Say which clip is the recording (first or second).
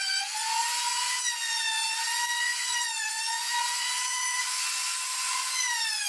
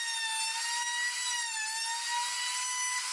second